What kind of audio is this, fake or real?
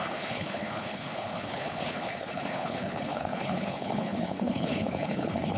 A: fake